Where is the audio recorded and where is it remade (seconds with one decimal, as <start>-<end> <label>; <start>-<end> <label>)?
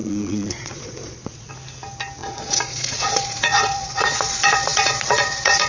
0.0-1.5 remade; 1.5-2.2 recorded; 2.2-5.7 remade